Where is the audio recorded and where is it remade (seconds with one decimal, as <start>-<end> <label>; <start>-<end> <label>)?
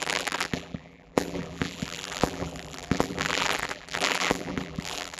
0.0-5.2 remade